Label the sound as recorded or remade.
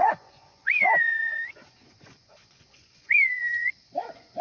remade